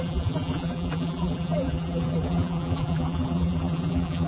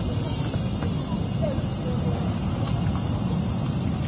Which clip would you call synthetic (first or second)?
first